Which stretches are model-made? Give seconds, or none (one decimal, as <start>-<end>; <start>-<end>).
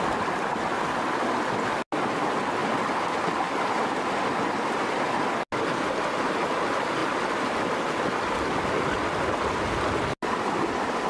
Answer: none